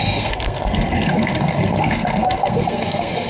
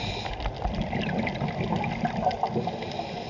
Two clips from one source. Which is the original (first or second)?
second